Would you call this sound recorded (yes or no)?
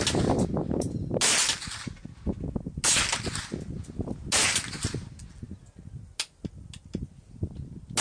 yes